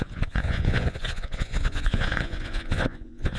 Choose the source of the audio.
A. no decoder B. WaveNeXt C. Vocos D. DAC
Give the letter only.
C